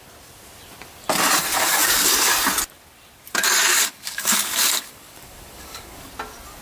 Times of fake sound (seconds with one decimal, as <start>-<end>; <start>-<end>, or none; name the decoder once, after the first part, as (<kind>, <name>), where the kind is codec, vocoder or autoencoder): 1.5-2.3 (codec, DAC); 3.7-6.1